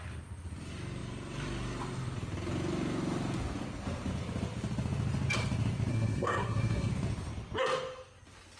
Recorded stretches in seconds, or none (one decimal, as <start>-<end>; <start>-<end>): 0.0-5.9; 6.9-8.6